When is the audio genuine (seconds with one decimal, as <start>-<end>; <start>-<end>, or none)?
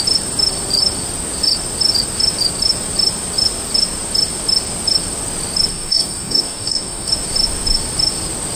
0.0-5.7; 7.1-8.6